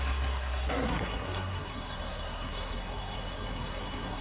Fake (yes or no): yes